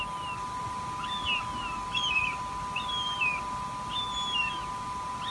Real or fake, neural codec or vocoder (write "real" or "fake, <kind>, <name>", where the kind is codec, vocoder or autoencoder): real